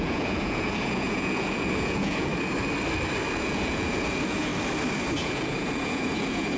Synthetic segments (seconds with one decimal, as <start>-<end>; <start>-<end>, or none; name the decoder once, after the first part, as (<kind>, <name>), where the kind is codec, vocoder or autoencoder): 0.0-2.3 (vocoder, Vocos); 3.4-4.5; 5.1-6.6